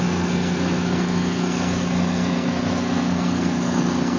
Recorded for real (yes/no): no